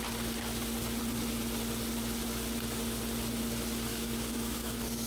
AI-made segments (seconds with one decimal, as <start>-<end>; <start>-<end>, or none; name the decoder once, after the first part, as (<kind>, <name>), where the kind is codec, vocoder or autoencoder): 3.9-5.1 (codec, DAC)